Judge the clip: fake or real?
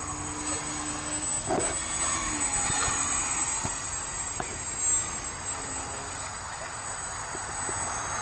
real